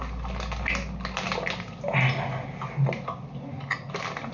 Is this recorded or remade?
recorded